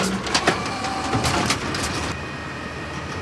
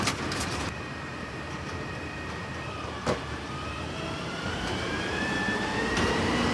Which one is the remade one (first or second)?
second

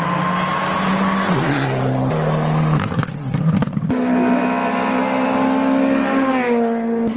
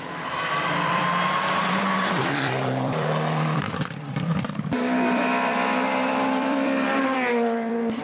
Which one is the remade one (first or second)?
second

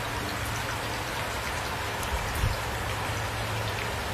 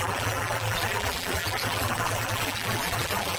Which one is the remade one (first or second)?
second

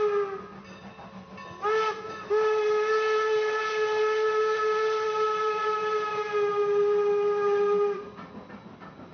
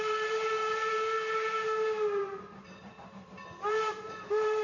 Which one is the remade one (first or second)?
second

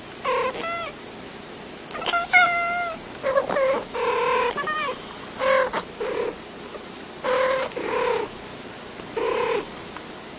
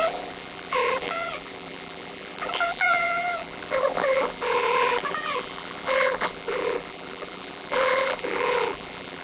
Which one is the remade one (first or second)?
second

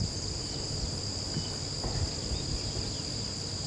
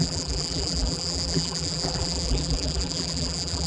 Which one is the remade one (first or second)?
second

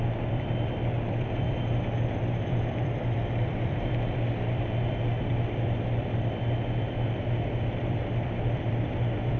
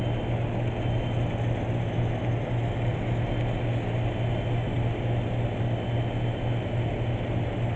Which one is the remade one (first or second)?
first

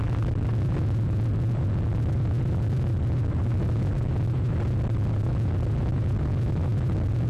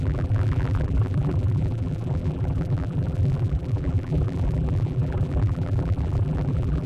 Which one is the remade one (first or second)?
second